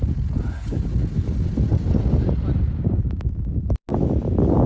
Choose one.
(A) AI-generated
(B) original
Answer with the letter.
B